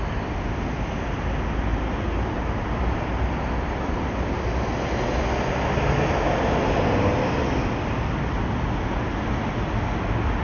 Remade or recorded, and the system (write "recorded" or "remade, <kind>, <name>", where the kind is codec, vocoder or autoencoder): recorded